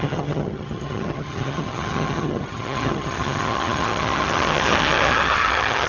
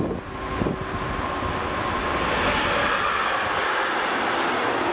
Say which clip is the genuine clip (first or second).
second